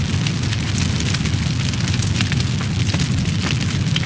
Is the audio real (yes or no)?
yes